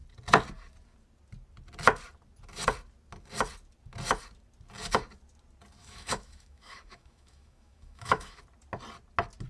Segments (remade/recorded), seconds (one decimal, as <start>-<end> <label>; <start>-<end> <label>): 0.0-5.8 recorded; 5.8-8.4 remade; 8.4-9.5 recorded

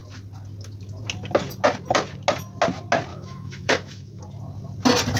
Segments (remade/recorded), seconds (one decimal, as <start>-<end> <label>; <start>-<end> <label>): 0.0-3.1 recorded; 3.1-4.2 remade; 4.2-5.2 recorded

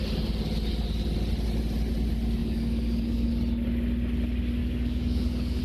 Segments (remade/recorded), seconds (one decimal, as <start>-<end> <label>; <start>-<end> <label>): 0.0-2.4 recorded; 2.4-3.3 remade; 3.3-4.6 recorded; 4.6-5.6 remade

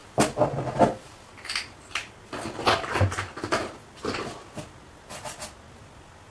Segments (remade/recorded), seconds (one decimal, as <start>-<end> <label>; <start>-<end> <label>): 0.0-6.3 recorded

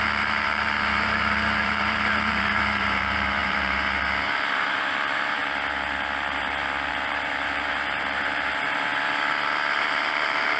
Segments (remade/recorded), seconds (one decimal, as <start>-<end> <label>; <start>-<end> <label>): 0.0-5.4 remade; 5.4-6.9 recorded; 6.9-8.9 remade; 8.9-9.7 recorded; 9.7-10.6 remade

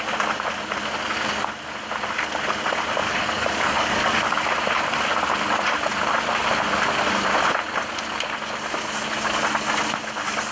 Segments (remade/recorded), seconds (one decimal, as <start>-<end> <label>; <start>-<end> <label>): 0.0-3.0 recorded; 3.0-4.4 remade; 4.4-10.5 recorded

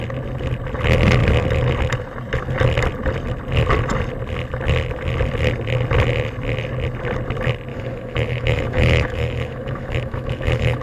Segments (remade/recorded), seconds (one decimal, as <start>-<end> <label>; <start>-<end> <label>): 0.0-7.7 recorded; 7.7-10.8 remade

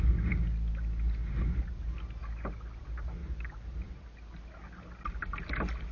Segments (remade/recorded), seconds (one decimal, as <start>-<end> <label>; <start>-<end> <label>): 0.0-3.2 recorded; 3.2-3.9 remade; 3.9-5.9 recorded